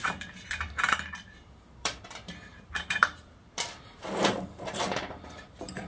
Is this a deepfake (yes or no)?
yes